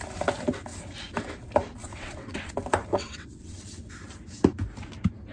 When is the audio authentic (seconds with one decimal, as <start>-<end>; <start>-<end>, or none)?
0.0-1.8; 2.5-2.9; 3.8-5.3